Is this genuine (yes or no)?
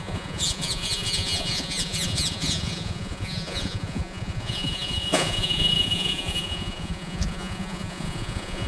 no